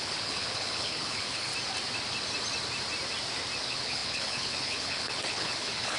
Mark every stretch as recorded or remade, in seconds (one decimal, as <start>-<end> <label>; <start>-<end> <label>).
0.0-1.5 remade; 1.5-3.6 recorded; 3.6-6.0 remade